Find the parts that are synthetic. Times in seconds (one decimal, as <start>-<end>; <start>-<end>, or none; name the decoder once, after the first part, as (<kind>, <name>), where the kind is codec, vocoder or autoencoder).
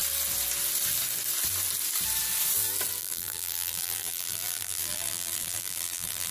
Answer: 3.0-6.3 (vocoder, BigVGAN v2)